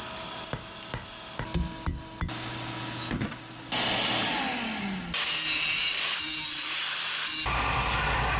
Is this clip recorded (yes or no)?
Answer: yes